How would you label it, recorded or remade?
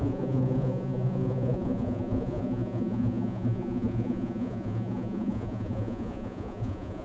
remade